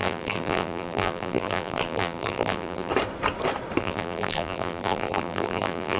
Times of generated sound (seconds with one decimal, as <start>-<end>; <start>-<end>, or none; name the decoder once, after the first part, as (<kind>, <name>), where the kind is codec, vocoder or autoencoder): 0.0-2.9 (vocoder, BigVGAN v2); 3.8-6.0